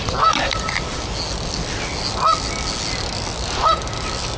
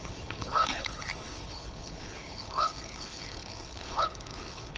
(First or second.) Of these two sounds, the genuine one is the first